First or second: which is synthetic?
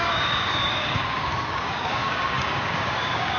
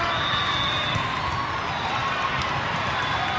first